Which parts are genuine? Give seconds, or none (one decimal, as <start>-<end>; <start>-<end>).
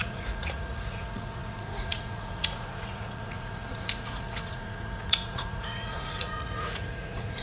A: none